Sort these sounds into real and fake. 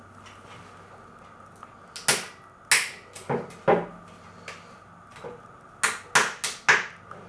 real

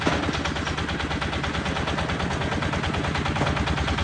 real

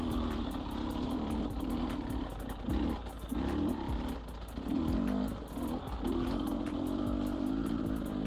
real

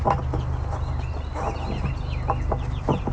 real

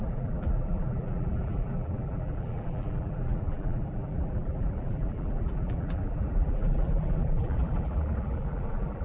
fake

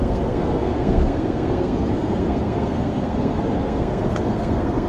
fake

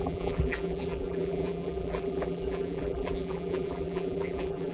fake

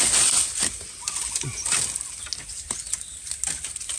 real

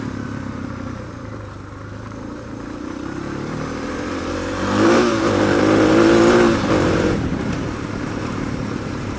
fake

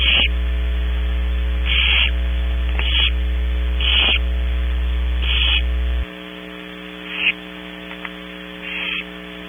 real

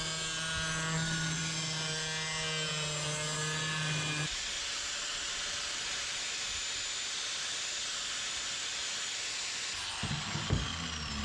real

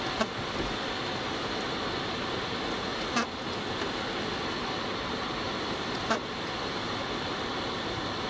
real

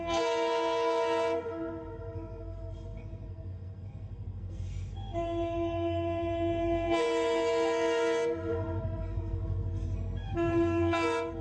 fake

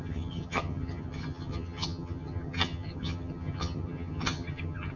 fake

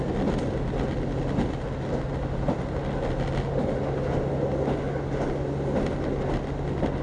real